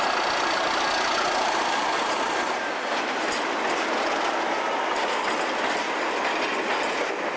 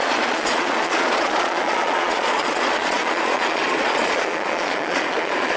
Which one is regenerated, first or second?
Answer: second